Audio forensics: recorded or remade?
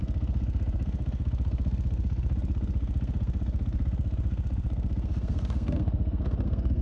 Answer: remade